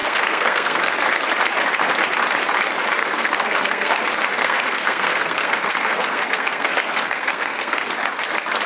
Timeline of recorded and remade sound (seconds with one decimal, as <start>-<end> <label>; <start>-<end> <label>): 0.0-1.0 remade; 1.0-3.0 recorded; 3.0-4.0 remade; 4.0-4.4 recorded; 4.4-7.9 remade; 7.9-8.7 recorded